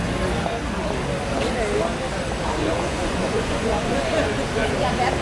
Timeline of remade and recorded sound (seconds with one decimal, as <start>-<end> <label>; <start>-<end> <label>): 0.0-2.6 recorded; 2.6-4.0 remade; 4.0-5.2 recorded

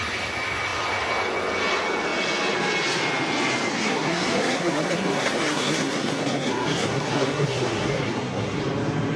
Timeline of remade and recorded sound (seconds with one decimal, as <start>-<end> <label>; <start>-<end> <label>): 0.0-3.7 recorded; 3.7-8.6 remade; 8.6-9.2 recorded

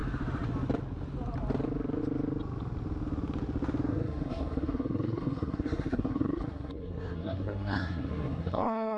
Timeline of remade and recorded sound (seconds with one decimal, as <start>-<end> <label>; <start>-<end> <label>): 0.0-3.9 recorded; 3.9-9.0 remade

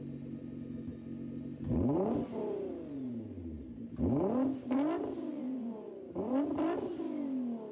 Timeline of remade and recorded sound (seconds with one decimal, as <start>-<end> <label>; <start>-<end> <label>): 0.0-5.3 recorded; 5.3-6.0 remade; 6.0-7.7 recorded